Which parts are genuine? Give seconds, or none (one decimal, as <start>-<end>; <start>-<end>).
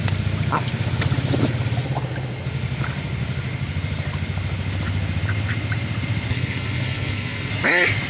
0.0-6.3; 7.5-8.1